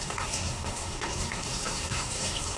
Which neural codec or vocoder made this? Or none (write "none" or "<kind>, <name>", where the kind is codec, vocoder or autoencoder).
codec, SNAC